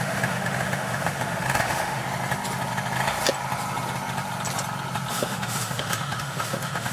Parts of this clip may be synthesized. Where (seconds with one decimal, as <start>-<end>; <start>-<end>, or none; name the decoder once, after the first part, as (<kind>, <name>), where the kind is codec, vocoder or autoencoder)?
0.0-2.0 (autoencoder, DAC-VAE); 5.1-6.9